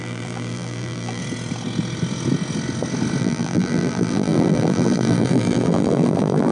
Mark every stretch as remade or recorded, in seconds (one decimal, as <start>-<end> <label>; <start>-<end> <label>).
0.0-1.2 remade; 1.2-3.2 recorded; 3.2-6.5 remade